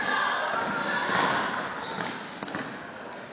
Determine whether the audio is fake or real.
real